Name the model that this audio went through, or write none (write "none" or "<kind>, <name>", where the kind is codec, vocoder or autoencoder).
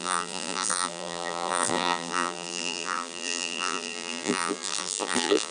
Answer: vocoder, BigVGAN v2